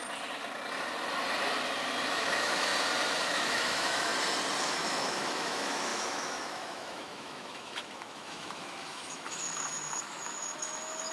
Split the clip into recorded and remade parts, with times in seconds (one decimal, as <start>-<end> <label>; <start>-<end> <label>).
0.0-2.1 recorded; 2.1-2.7 remade; 2.7-3.3 recorded; 3.3-4.1 remade; 4.1-4.6 recorded; 4.6-11.1 remade